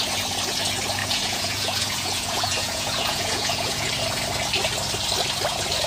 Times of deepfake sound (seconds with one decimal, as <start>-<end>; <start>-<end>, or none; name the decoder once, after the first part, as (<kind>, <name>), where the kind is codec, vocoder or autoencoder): 1.0-3.9 (vocoder, Vocos)